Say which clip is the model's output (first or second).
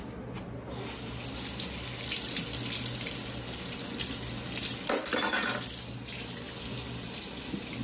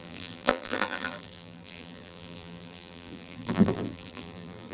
second